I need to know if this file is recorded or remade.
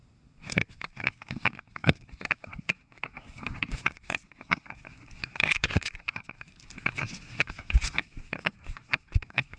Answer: remade